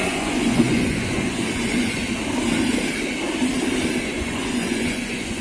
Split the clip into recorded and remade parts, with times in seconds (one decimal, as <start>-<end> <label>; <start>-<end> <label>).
0.0-2.0 remade; 2.0-4.0 recorded; 4.0-5.4 remade